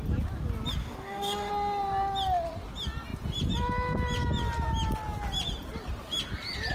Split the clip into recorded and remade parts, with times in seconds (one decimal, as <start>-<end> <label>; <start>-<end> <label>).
0.0-0.8 recorded; 0.8-1.5 remade; 1.5-6.7 recorded